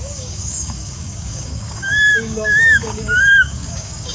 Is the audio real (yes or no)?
no